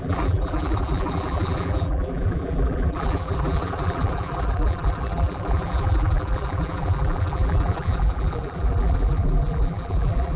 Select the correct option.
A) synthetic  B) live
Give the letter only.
A